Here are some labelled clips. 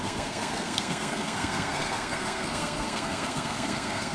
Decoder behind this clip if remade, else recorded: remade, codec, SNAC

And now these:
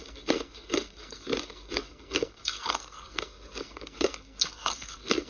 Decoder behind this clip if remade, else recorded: remade, codec, SNAC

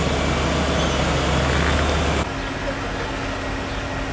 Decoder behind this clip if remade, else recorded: recorded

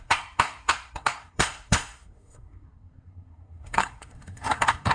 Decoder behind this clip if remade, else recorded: remade, codec, SNAC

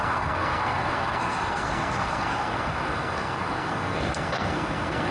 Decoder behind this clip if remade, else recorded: remade, codec, SNAC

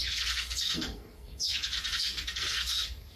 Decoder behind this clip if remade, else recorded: remade, codec, SNAC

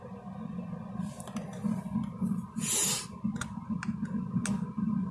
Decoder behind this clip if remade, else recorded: recorded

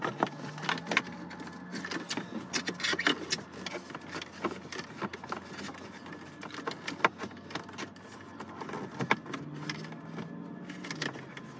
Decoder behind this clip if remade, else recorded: recorded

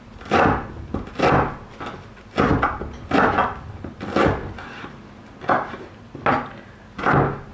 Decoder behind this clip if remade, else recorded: recorded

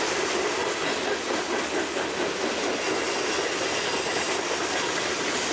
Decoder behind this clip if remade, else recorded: recorded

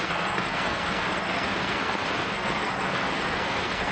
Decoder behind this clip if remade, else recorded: remade, codec, SNAC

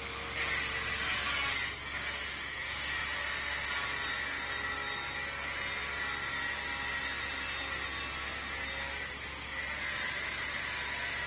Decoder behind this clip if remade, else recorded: recorded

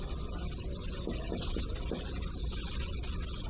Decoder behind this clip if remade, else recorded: recorded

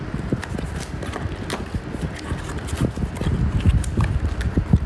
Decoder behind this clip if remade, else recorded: recorded